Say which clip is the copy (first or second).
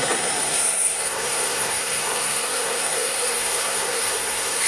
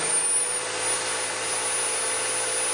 first